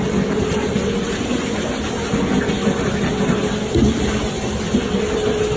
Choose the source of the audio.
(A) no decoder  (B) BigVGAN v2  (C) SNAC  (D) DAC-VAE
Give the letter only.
A